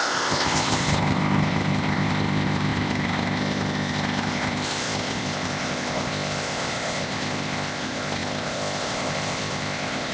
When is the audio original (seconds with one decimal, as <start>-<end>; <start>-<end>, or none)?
none

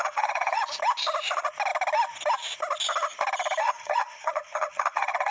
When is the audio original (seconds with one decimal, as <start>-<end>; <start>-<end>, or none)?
0.6-3.6

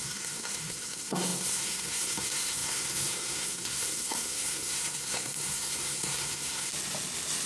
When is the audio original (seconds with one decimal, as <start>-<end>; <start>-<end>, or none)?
6.7-7.5

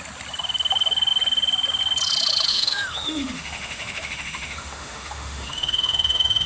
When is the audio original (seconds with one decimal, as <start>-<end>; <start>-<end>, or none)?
0.0-2.5

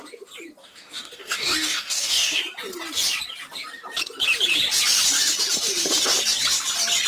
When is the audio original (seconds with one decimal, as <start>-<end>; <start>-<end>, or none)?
0.0-0.6; 2.4-7.1

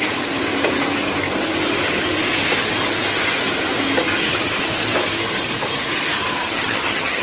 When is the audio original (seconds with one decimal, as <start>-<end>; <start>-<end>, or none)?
0.0-6.4

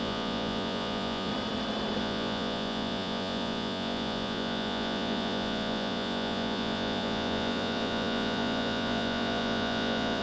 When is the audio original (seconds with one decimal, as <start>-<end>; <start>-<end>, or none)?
1.3-2.0

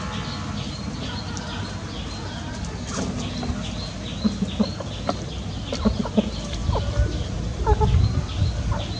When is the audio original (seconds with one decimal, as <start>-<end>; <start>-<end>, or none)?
0.0-9.0